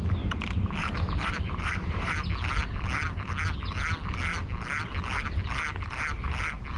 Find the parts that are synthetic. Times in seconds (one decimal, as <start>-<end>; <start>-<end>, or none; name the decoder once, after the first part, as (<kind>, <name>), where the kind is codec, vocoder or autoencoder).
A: 0.8-2.1 (vocoder, BigVGAN v2)